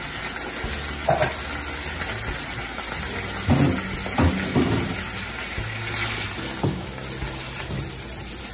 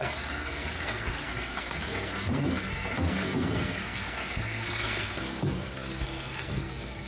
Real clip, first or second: first